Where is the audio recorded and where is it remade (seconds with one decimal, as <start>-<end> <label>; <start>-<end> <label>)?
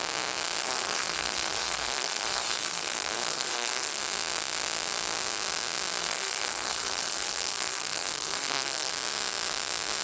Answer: 0.0-0.6 recorded; 0.6-4.0 remade; 4.0-6.0 recorded; 6.0-8.9 remade; 8.9-10.0 recorded